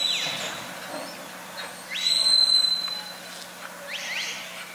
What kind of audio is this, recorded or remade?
recorded